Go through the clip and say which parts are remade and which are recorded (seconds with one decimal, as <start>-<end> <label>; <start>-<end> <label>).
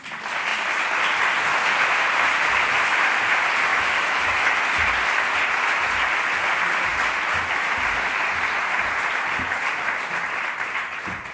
0.0-3.7 recorded; 3.7-4.5 remade; 4.5-11.3 recorded